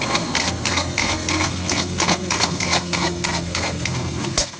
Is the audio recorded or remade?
remade